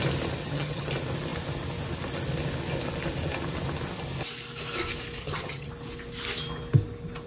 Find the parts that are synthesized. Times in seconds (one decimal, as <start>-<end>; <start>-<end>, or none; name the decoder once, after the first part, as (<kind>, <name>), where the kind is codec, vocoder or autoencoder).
0.4-0.9 (vocoder, HiFi-GAN); 5.2-5.7